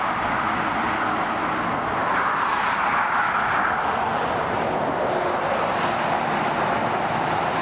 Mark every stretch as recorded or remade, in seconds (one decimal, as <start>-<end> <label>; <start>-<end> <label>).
0.0-7.6 recorded